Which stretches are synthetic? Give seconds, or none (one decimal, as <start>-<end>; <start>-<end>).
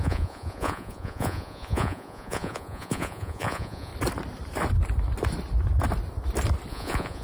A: 0.0-3.9; 6.7-7.2